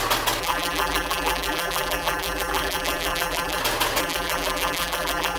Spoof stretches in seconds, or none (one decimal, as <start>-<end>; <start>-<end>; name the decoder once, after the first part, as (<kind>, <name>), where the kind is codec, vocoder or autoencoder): 0.4-3.6 (vocoder, BigVGAN v2); 4.0-5.4